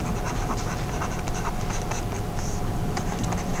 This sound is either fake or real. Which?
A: fake